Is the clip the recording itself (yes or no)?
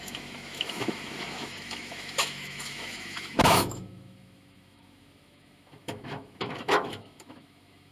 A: no